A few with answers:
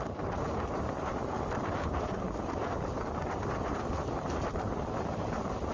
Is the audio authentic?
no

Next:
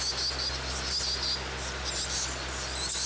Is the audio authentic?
yes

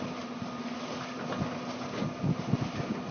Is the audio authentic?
yes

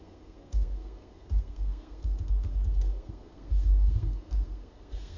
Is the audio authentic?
no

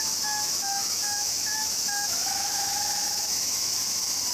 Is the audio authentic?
no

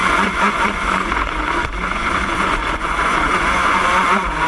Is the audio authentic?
no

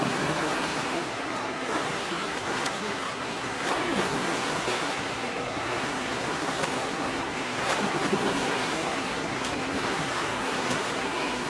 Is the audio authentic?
no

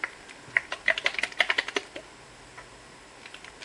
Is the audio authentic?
yes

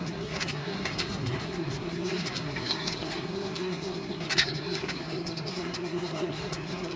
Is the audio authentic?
no